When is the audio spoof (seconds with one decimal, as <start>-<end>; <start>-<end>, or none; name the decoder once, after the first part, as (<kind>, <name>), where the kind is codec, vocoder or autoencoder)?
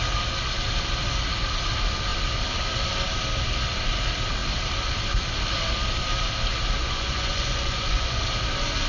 6.8-8.2 (vocoder, Vocos)